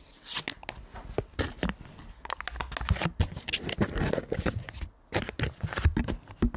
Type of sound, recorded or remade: recorded